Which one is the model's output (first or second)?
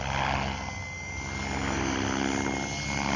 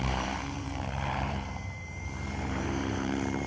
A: second